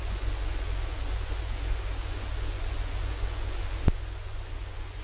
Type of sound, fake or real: fake